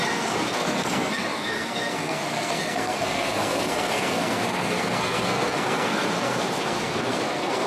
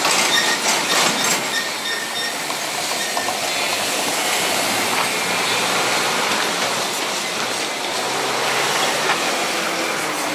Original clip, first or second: second